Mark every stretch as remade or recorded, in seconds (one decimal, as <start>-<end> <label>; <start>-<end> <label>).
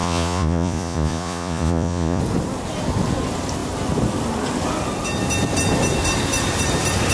0.0-2.2 remade; 2.2-7.1 recorded